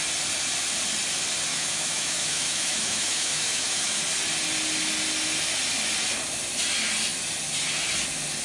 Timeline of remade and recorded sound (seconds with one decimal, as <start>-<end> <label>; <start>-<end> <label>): 0.0-1.5 recorded; 1.5-4.0 remade; 4.0-8.4 recorded